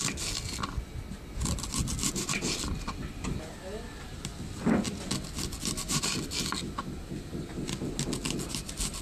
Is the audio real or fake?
real